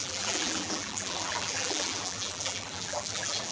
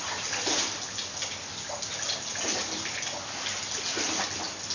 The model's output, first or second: first